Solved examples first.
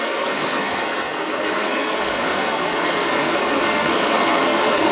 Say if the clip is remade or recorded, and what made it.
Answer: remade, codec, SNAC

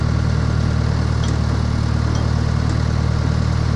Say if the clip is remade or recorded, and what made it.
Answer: recorded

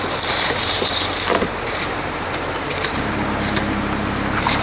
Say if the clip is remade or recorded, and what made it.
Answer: remade, vocoder, BigVGAN v2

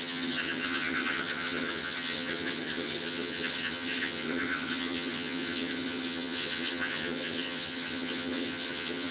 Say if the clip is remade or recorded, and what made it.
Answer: remade, vocoder, HiFi-GAN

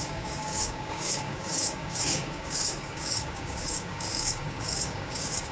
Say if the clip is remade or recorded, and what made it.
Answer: remade, codec, DAC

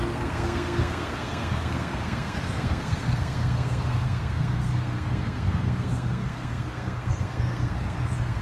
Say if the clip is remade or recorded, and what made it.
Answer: remade, codec, SNAC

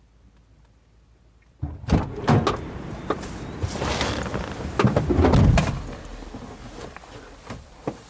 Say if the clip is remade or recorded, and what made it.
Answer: recorded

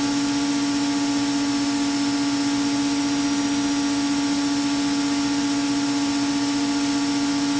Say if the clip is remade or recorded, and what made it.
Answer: recorded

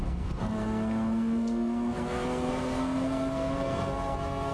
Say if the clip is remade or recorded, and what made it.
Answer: remade, codec, SNAC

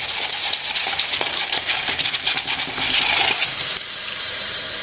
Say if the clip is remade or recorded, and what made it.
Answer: remade, vocoder, BigVGAN v2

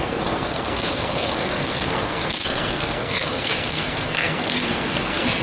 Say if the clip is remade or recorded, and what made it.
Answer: remade, codec, SNAC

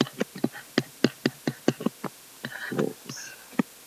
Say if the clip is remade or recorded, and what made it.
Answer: recorded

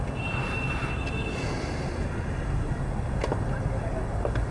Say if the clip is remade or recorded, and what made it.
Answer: recorded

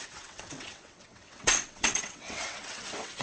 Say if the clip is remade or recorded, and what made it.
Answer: remade, vocoder, WaveNeXt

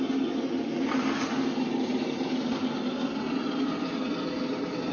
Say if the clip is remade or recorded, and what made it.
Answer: recorded